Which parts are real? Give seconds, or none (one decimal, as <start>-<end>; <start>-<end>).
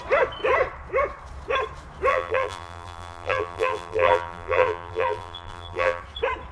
0.0-2.1; 6.0-6.5